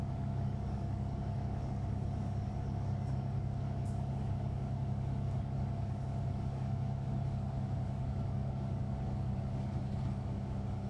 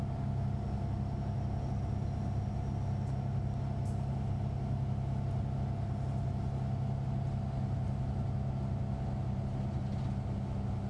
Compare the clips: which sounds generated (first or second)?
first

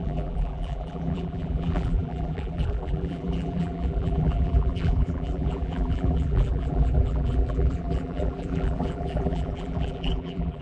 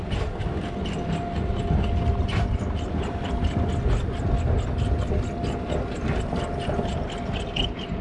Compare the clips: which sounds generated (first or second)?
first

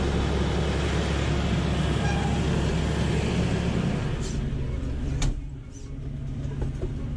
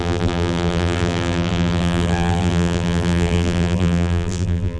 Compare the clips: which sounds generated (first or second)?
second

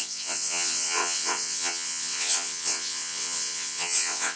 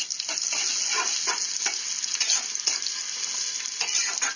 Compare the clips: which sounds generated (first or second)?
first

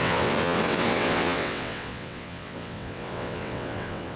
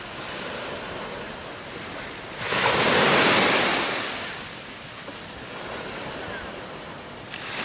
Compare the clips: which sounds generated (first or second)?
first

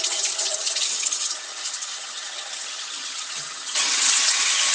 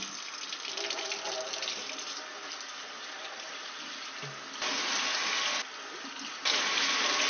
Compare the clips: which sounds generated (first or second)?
first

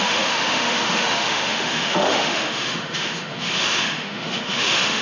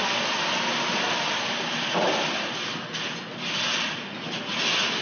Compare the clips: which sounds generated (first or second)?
first